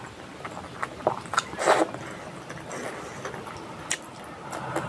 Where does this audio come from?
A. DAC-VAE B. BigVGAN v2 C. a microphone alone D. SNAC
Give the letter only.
C